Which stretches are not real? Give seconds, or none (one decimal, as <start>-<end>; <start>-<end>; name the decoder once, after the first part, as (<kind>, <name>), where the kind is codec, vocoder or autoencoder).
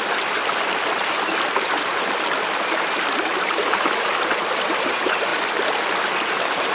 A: 0.0-0.4 (vocoder, BigVGAN v2); 3.4-5.3